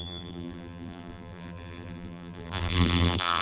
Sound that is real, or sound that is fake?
fake